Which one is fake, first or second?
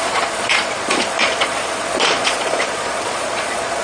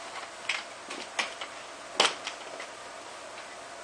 first